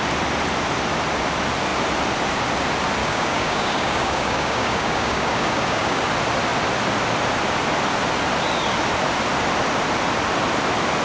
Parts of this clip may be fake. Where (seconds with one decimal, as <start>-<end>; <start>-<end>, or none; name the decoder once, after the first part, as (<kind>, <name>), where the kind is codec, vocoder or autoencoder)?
3.0-6.0 (codec, DAC)